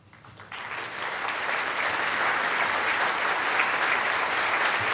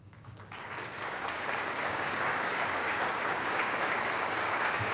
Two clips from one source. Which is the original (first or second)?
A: first